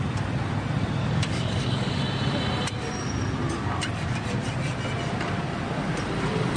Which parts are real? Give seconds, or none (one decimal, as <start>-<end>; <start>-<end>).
0.0-1.0; 2.0-6.6